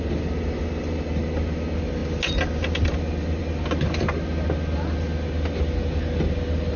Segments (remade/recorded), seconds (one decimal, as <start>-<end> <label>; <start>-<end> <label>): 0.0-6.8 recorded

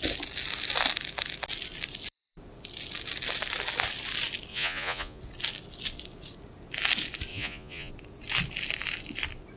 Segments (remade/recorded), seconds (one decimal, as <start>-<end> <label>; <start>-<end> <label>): 0.0-4.5 recorded; 4.5-5.2 remade; 5.2-7.3 recorded; 7.3-7.9 remade; 7.9-9.6 recorded

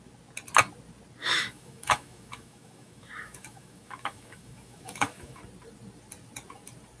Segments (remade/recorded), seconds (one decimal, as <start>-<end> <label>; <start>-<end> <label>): 0.0-1.2 recorded; 1.2-5.4 remade; 5.4-7.0 recorded

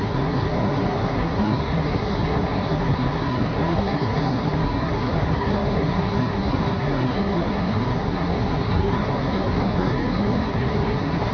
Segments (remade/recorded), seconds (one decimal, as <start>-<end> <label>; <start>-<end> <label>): 0.0-11.3 remade

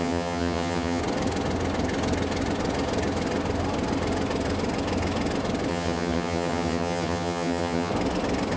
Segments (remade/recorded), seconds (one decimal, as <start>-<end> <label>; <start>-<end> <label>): 0.0-1.0 remade; 1.0-5.7 recorded; 5.7-7.9 remade; 7.9-8.6 recorded

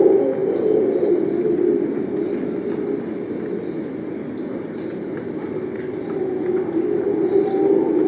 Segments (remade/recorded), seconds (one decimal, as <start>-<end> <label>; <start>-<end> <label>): 0.0-8.1 recorded

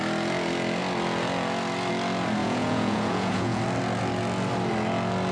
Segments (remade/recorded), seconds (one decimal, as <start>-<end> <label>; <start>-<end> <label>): 0.0-2.4 recorded; 2.4-3.6 remade; 3.6-5.3 recorded